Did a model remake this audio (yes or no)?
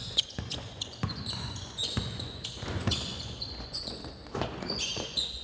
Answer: yes